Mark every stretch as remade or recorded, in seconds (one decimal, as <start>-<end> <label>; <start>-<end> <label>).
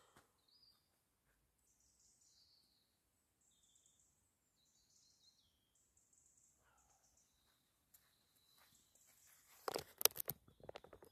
0.0-11.1 recorded